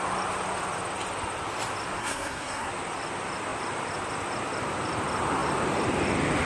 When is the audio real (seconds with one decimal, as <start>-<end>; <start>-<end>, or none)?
0.0-2.0; 2.7-6.4